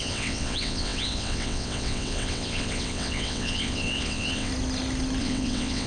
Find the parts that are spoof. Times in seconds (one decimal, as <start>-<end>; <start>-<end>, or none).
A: 0.0-4.5; 5.2-5.9